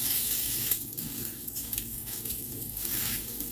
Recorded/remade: remade